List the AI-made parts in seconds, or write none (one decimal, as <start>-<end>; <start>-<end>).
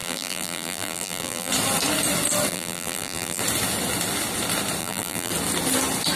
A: 0.0-1.5; 2.5-3.4; 4.8-5.3